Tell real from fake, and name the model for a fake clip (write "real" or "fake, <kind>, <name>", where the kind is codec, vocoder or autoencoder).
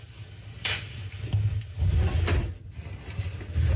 real